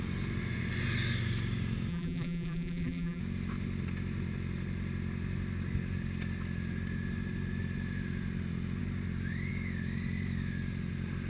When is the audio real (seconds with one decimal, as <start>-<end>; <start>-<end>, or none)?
0.0-1.9; 3.2-11.3